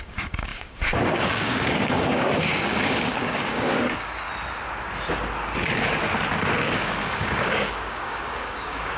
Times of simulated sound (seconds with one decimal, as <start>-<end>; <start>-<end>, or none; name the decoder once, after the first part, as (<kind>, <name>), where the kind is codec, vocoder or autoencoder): 0.0-4.3 (codec, DAC); 6.6-9.0